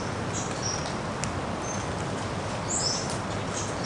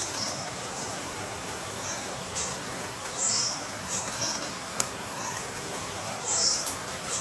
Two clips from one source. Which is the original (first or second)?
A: first